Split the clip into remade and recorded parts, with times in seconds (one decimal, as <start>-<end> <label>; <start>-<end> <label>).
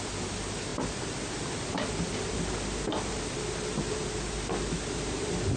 0.0-5.6 recorded